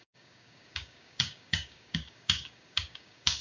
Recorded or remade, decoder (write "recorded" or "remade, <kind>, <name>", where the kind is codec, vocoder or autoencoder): remade, codec, DAC